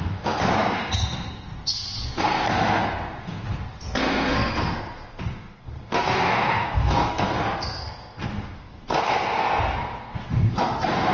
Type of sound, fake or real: fake